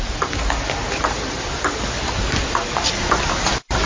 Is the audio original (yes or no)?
yes